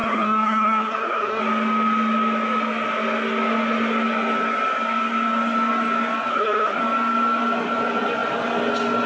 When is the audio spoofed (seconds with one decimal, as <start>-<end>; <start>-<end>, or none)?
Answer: 0.0-1.4; 6.3-6.8

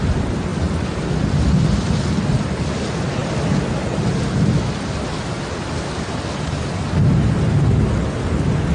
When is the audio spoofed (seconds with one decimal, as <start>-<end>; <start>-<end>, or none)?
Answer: none

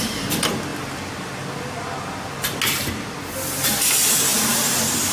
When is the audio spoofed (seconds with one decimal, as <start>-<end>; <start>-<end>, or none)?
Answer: none